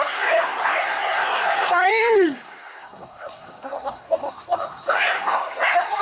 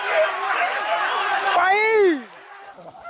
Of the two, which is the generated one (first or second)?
first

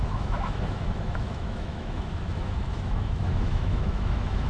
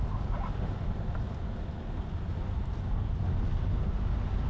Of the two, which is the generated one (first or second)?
first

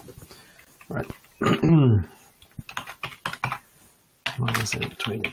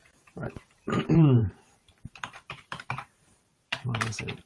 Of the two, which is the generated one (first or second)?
second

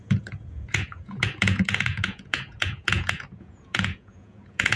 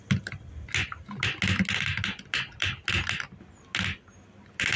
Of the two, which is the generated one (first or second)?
first